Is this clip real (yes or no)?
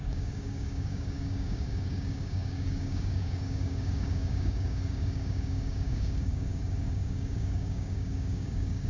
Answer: no